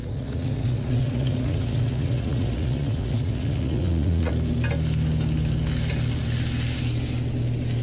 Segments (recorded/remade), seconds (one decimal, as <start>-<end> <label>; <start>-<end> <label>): 0.0-4.3 remade; 4.3-7.8 recorded